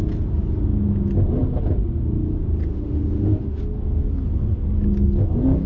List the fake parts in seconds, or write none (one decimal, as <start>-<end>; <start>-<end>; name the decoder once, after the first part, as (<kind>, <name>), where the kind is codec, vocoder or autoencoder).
2.7-3.6 (autoencoder, DAC-VAE)

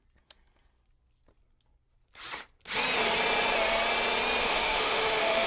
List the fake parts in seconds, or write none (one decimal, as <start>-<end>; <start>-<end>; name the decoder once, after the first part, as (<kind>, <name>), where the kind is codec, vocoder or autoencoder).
4.4-5.5 (autoencoder, DAC-VAE)

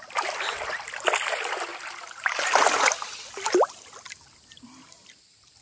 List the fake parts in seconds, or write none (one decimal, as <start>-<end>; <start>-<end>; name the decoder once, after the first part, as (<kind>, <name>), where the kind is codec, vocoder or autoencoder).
none

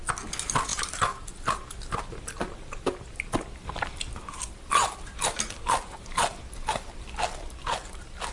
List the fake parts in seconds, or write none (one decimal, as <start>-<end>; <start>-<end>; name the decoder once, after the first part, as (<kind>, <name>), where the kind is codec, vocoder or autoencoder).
none